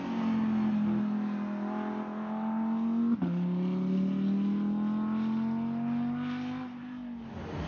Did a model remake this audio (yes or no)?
no